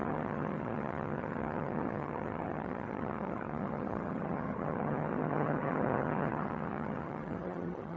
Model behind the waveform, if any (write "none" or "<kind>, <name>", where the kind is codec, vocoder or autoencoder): vocoder, HiFi-GAN